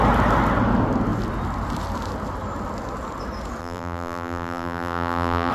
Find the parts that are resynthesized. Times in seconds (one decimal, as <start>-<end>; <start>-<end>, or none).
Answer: 3.6-5.5

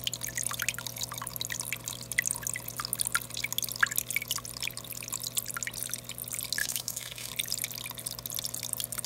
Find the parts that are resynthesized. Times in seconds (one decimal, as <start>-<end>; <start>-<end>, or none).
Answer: 6.6-7.3

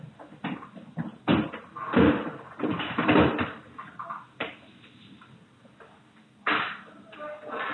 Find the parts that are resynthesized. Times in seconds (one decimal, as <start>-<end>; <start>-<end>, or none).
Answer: none

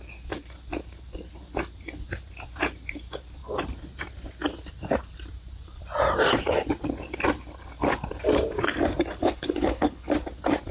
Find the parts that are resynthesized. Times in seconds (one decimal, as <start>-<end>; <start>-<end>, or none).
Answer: 9.2-10.1

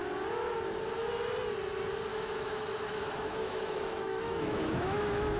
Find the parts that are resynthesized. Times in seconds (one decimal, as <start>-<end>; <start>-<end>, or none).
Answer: 2.1-5.4

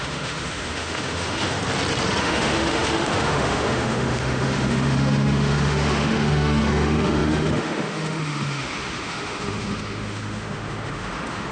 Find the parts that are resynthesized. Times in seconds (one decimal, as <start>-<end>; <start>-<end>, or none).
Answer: 0.0-1.6; 2.2-11.5